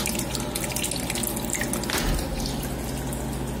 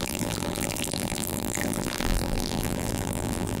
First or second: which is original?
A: first